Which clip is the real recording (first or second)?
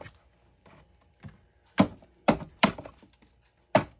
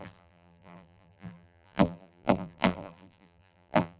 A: first